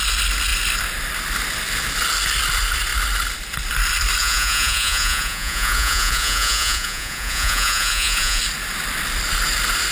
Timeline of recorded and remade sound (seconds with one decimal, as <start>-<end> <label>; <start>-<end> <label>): 0.0-4.2 recorded; 4.2-8.4 remade; 8.4-9.9 recorded